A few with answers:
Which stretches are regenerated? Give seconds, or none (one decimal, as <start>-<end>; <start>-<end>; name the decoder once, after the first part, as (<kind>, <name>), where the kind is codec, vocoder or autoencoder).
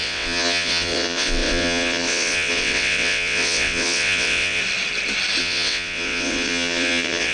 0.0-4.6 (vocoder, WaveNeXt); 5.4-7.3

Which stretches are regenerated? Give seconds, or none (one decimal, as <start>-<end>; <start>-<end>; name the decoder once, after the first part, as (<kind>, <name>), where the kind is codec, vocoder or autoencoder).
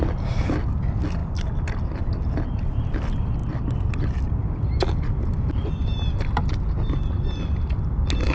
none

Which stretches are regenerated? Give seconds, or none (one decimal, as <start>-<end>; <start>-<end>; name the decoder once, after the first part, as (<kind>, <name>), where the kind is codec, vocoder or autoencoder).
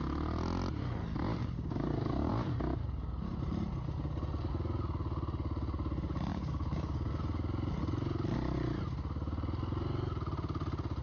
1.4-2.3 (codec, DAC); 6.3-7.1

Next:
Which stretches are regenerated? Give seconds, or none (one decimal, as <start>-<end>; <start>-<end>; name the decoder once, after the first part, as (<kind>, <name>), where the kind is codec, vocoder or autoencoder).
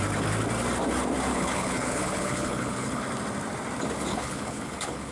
1.3-3.0 (codec, HILCodec); 4.1-5.1